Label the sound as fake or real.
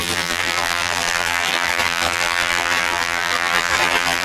fake